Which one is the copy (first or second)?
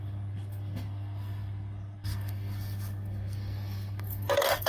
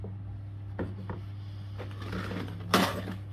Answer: first